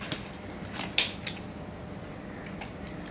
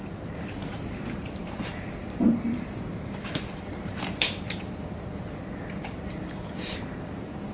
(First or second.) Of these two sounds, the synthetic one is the second